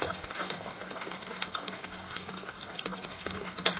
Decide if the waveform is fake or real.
fake